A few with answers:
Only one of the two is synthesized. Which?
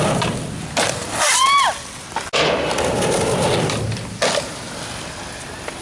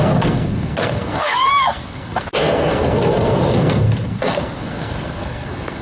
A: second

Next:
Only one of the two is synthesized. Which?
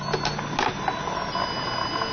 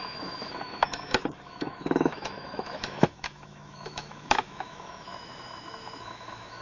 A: second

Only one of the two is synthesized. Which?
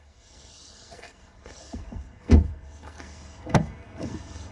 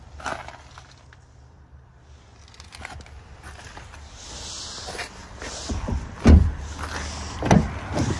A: first